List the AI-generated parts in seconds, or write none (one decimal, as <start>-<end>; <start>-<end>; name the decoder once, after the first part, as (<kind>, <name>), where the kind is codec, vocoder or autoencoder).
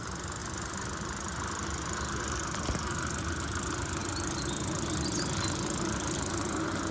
none